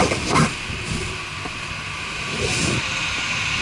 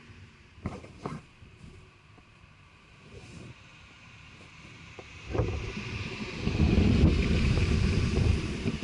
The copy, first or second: second